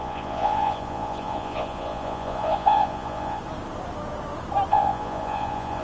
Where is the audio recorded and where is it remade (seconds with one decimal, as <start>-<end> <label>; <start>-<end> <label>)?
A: 0.0-3.4 remade; 3.4-4.7 recorded; 4.7-5.8 remade